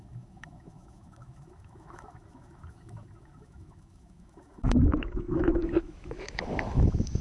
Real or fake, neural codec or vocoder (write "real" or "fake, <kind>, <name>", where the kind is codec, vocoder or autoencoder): fake, autoencoder, DAC-VAE